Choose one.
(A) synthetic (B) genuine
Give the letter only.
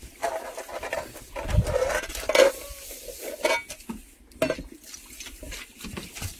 B